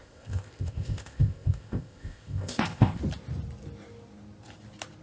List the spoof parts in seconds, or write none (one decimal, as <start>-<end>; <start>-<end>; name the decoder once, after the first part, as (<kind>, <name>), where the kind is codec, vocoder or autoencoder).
0.0-3.0 (codec, ZipCodec)